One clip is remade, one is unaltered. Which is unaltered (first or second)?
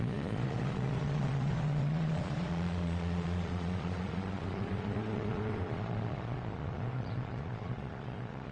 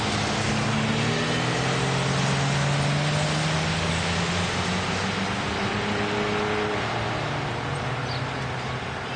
second